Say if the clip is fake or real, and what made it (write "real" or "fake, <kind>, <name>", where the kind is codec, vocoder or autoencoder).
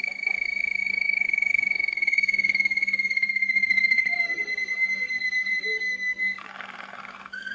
fake, codec, SNAC